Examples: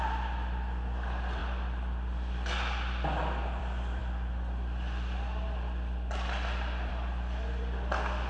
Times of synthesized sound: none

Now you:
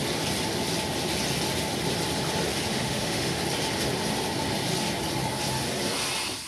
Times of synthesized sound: 2.7-3.4

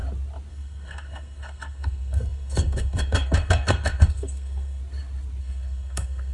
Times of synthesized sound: 0.5-4.8; 5.4-6.3

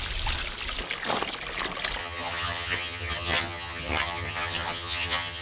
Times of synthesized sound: 2.0-5.4

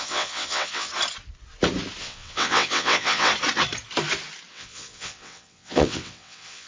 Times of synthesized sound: 0.0-0.9; 2.0-3.3; 4.5-6.7

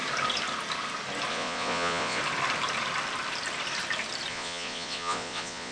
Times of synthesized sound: 1.3-2.2; 4.3-5.7

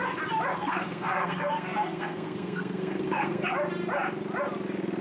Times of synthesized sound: 0.5-3.5

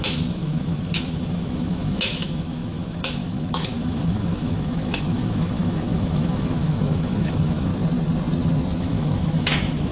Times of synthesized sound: 0.0-7.7; 8.8-9.9